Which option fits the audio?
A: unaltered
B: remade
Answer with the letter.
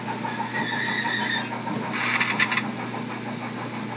A